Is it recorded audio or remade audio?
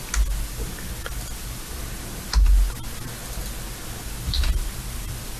recorded